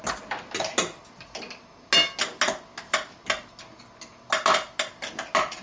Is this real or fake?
real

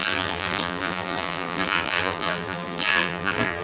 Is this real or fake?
fake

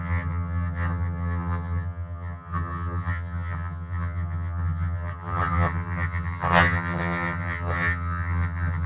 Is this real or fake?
fake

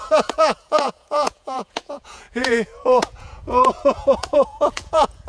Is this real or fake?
fake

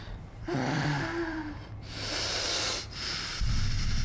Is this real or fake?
fake